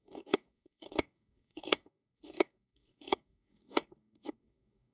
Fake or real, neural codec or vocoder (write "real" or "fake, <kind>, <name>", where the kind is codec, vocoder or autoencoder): fake, codec, DAC